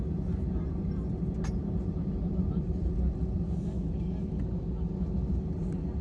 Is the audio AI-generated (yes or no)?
no